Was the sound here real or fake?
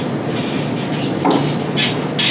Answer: real